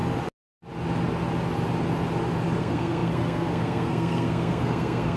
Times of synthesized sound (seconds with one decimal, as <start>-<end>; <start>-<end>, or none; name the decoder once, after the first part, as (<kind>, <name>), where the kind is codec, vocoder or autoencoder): 2.6-5.2 (codec, SNAC)